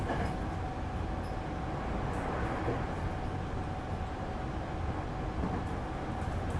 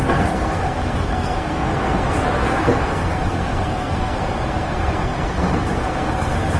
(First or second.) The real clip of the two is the first